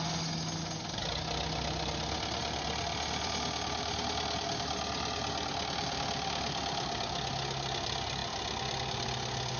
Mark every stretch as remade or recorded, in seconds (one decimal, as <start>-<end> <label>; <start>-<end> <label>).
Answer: 0.0-9.6 recorded